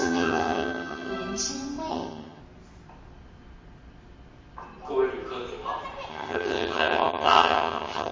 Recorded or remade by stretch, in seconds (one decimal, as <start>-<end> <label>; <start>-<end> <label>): 0.0-1.1 remade; 1.1-1.9 recorded; 1.9-2.4 remade; 2.4-6.1 recorded; 6.1-8.1 remade